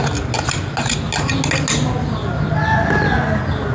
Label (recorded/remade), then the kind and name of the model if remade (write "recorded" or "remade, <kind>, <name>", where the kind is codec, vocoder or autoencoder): recorded